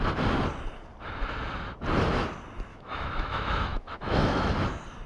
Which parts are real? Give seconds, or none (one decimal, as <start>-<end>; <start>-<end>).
0.0-2.7; 4.5-5.1